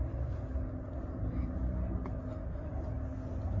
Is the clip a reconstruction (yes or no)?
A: no